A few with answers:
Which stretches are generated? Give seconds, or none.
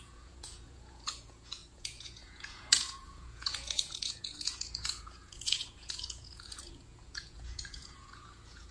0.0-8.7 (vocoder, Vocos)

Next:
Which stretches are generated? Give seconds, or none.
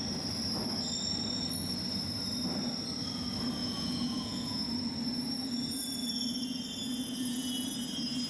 3.6-4.6 (vocoder, Vocos); 6.0-7.7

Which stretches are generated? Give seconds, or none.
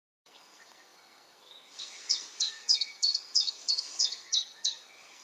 0.0-5.2 (codec, SNAC)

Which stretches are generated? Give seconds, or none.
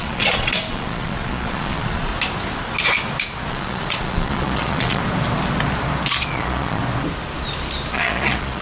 0.0-2.1 (vocoder, Vocos); 3.5-5.0; 6.3-6.8; 7.9-8.6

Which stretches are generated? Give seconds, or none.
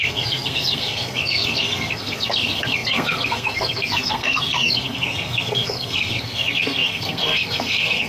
0.0-8.1 (codec, SNAC)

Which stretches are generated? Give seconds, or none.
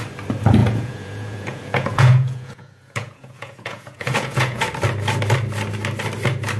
0.6-4.6 (vocoder, Vocos)